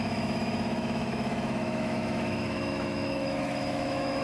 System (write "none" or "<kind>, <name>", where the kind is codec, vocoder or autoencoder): autoencoder, DAC-VAE